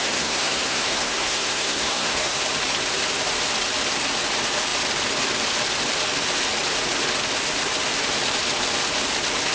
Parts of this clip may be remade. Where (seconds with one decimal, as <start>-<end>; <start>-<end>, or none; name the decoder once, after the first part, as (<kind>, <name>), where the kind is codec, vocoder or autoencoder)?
0.0-2.4 (codec, SNAC)